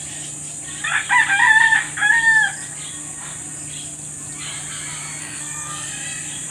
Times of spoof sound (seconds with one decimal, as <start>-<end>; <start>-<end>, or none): 5.2-5.9